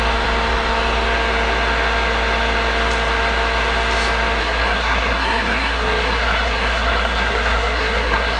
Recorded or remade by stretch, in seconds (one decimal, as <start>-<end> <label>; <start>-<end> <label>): 0.0-4.4 recorded; 4.4-8.4 remade